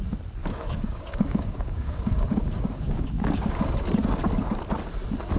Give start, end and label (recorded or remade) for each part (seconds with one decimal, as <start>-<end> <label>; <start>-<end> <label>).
0.0-0.4 recorded; 0.4-3.6 remade; 3.6-5.4 recorded